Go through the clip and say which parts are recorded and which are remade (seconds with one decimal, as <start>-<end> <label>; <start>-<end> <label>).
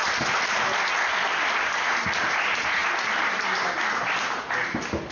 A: 0.0-5.1 recorded